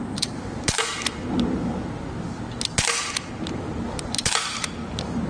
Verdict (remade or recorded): recorded